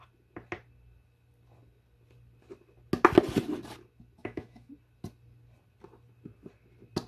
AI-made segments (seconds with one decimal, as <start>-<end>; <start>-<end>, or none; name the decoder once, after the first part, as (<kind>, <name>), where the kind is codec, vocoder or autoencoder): 4.2-4.7 (autoencoder, DAC-VAE)